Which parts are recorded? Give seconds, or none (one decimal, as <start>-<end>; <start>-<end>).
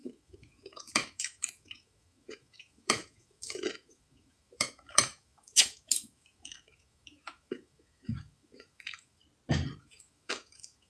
9.2-9.8